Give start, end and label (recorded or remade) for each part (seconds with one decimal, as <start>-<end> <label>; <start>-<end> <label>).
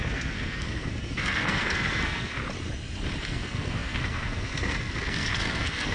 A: 0.0-2.4 remade; 2.4-3.2 recorded; 3.2-5.9 remade